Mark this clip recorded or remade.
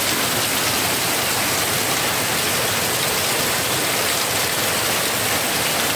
recorded